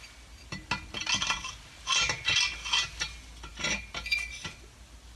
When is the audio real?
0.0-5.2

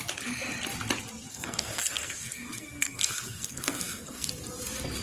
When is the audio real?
0.0-1.3; 4.3-5.0

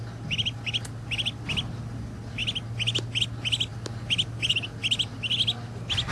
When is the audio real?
0.0-6.1

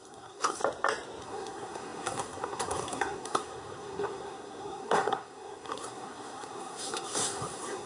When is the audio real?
0.6-1.2

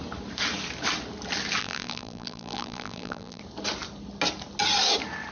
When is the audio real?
0.0-1.6; 3.4-5.3

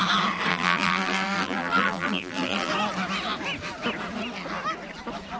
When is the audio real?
0.0-0.5; 2.7-5.4

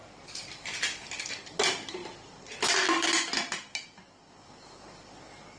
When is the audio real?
0.0-5.6

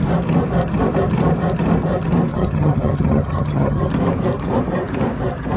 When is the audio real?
0.0-2.3; 3.9-5.6